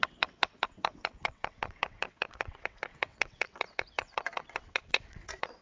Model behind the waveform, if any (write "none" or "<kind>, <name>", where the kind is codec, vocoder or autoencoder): vocoder, WaveNeXt